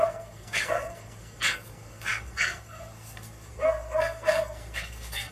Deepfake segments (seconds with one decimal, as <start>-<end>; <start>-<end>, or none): 0.0-5.3